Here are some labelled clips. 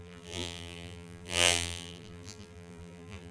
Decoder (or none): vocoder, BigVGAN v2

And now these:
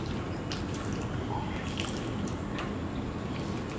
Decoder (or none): none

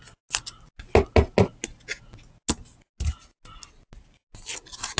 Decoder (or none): none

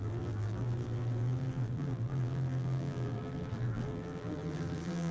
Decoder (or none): vocoder, BigVGAN v2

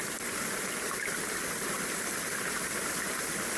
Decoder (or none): vocoder, BigVGAN v2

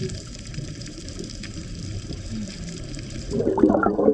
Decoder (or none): vocoder, BigVGAN v2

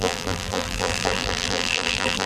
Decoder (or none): vocoder, BigVGAN v2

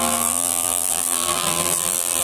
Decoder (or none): vocoder, BigVGAN v2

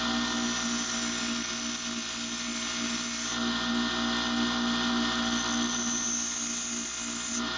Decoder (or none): none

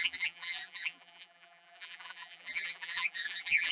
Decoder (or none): vocoder, BigVGAN v2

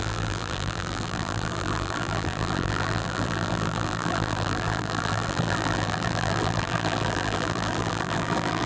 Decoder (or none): vocoder, BigVGAN v2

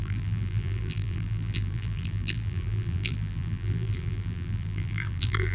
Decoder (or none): vocoder, BigVGAN v2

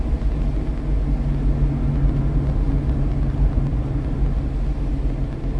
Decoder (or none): none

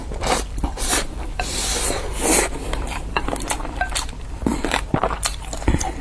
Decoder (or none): vocoder, BigVGAN v2